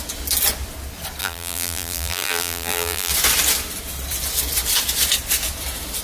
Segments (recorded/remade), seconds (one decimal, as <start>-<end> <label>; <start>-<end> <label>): 0.0-1.2 recorded; 1.2-3.1 remade; 3.1-6.0 recorded